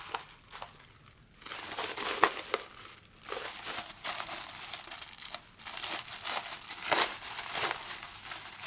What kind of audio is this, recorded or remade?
remade